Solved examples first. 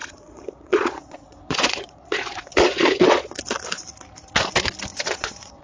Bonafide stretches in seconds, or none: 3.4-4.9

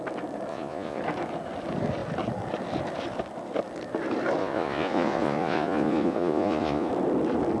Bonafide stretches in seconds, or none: 0.0-0.5; 1.0-4.4; 6.9-7.6

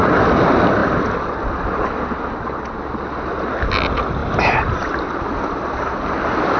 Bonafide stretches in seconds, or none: 0.0-6.6

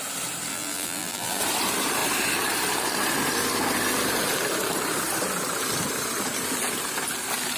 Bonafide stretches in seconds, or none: 0.0-0.5; 1.4-7.6